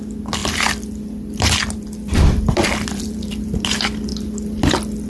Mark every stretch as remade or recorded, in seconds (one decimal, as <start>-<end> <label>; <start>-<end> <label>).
0.0-0.4 recorded; 0.4-3.3 remade; 3.3-4.1 recorded; 4.1-5.1 remade